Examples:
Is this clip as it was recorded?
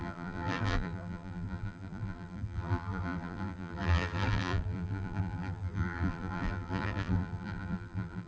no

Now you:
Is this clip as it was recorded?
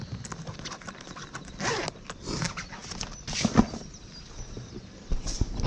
yes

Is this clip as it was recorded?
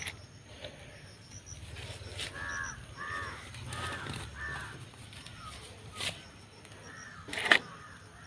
yes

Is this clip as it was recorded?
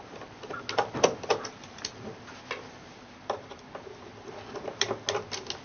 yes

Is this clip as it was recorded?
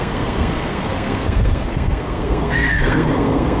no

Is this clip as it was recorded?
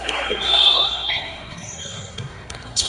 no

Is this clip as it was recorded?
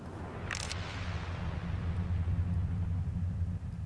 yes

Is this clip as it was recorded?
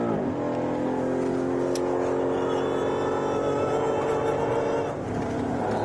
yes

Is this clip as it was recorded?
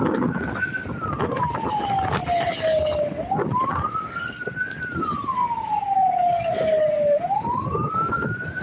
yes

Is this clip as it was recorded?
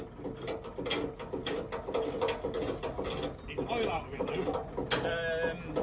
yes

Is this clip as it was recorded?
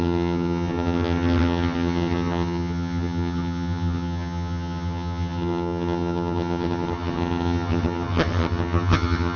no